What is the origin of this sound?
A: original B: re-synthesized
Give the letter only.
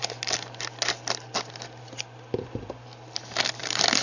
A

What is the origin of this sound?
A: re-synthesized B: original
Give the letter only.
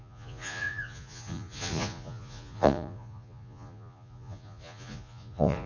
A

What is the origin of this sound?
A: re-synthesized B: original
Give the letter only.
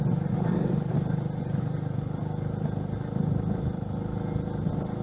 B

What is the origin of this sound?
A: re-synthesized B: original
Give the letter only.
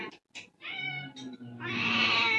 B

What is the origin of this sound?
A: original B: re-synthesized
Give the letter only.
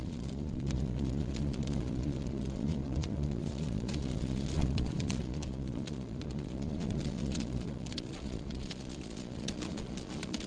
B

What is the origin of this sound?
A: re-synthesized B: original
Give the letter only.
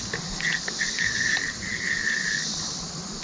B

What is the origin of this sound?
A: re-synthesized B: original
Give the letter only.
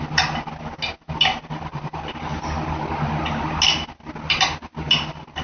B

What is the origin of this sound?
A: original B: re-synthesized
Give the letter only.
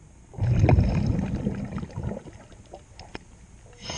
A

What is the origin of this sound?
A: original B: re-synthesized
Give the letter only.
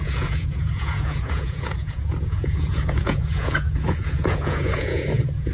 B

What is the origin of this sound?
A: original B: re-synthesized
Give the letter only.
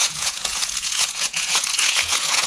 B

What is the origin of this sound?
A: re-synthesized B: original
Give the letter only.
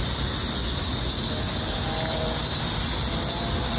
B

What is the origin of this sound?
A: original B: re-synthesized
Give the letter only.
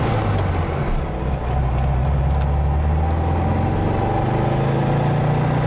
A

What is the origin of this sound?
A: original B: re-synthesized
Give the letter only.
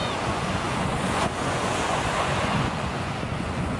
B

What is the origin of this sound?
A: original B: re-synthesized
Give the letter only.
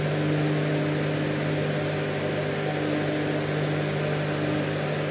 A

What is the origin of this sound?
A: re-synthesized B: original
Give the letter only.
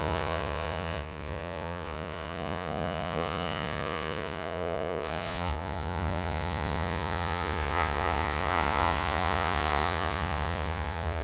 A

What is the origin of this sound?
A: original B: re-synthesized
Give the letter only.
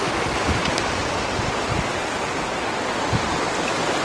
A